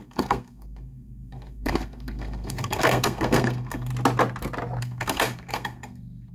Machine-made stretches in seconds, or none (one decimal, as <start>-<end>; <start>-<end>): 0.0-3.9; 4.8-6.3